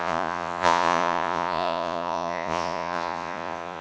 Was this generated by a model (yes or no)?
yes